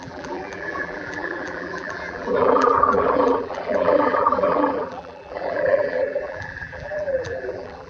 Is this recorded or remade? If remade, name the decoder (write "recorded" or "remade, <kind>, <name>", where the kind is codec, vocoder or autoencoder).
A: remade, vocoder, BigVGAN v2